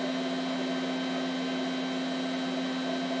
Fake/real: real